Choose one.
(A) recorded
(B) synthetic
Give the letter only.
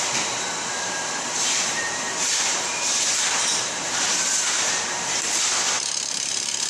B